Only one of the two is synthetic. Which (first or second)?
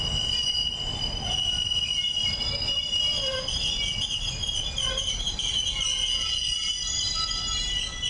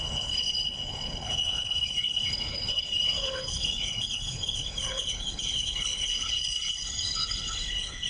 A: second